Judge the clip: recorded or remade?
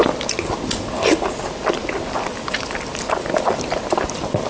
recorded